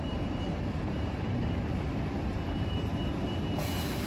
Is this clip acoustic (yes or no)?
no